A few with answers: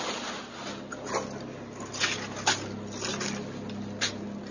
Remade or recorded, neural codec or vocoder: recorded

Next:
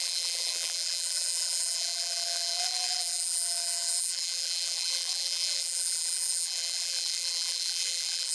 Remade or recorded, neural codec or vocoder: remade, vocoder, BigVGAN v2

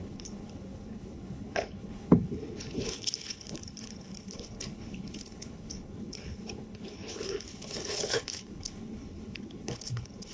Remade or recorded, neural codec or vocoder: remade, codec, HILCodec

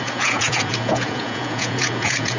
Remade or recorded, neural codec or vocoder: remade, vocoder, Vocos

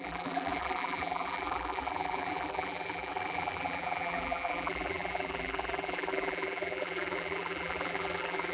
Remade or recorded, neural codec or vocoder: remade, vocoder, BigVGAN v2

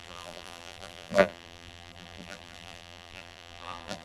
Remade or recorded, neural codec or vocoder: remade, vocoder, BigVGAN v2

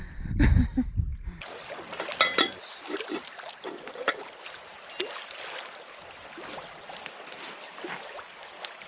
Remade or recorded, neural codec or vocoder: recorded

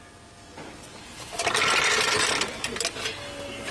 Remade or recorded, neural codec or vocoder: recorded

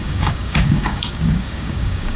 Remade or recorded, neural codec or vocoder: remade, codec, DAC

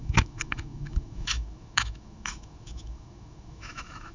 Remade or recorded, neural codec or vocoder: remade, autoencoder, DAC-VAE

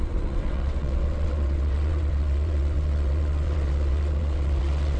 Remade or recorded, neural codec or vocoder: remade, vocoder, WaveNeXt